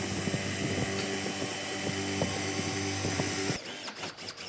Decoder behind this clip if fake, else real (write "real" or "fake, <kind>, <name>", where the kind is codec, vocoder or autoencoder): real